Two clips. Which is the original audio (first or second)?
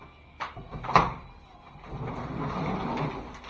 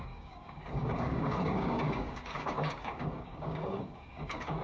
first